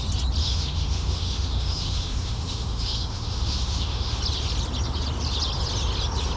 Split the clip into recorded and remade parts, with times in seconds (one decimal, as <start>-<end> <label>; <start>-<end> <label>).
0.0-0.4 recorded; 0.4-4.2 remade; 4.2-6.4 recorded